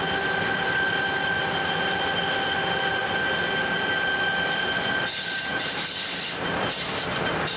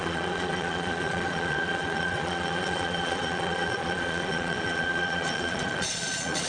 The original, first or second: first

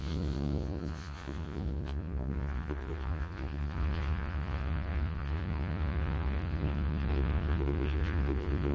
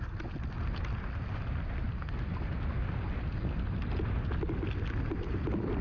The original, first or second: second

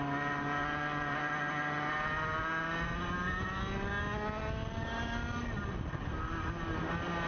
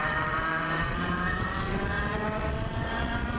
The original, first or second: first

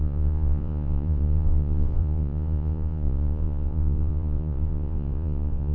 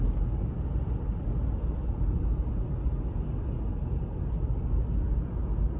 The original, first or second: second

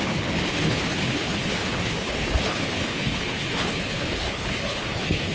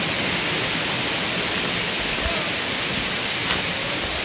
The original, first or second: second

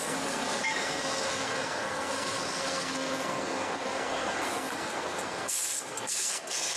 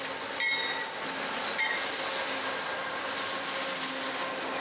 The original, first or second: second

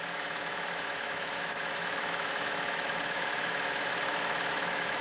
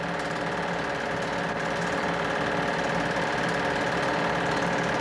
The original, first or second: second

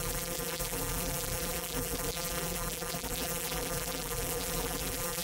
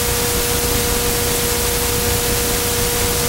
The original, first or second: second